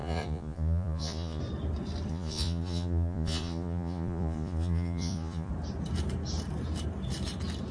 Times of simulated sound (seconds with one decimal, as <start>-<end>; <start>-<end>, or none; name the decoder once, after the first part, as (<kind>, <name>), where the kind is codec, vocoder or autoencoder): 0.0-1.4 (vocoder, Vocos); 2.1-5.5